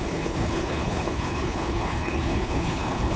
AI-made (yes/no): yes